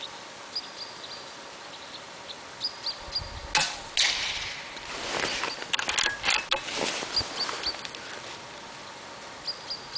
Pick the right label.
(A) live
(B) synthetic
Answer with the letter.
A